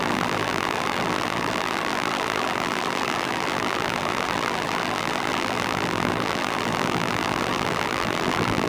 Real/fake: fake